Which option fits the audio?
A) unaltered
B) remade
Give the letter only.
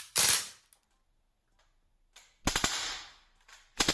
A